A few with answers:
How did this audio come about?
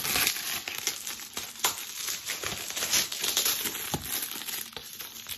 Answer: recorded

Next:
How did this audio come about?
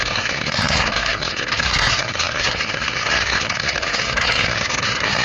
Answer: remade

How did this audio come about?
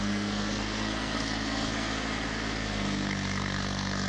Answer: remade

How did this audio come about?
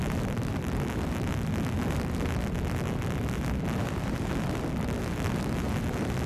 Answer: remade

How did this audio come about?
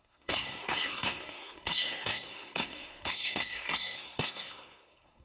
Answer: remade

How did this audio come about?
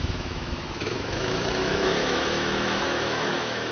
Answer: remade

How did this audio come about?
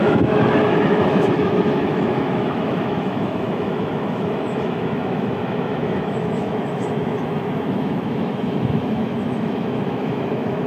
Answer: remade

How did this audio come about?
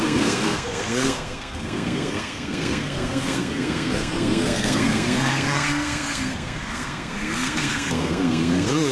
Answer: remade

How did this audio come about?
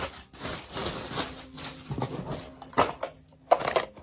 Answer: recorded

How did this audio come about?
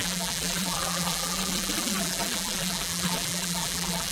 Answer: remade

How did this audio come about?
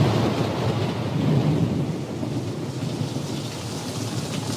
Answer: recorded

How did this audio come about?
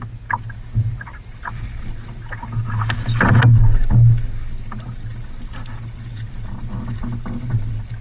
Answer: recorded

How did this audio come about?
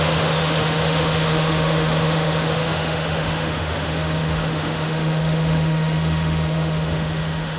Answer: remade